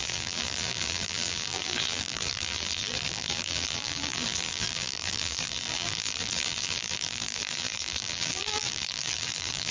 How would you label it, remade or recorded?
remade